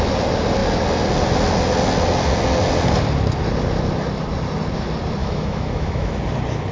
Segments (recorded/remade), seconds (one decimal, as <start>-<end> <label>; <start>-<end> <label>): 0.0-5.2 recorded; 5.2-6.2 remade; 6.2-6.7 recorded